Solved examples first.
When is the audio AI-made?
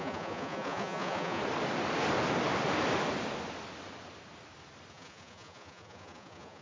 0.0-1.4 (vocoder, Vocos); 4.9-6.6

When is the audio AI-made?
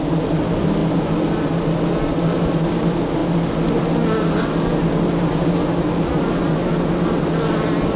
none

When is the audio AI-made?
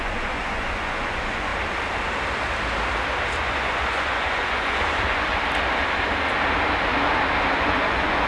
0.0-1.5 (vocoder, Vocos); 3.4-5.3; 7.6-8.3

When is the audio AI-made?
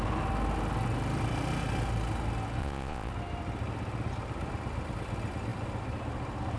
2.6-3.1 (vocoder, Vocos)